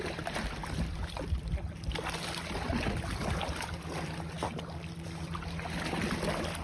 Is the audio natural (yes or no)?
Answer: yes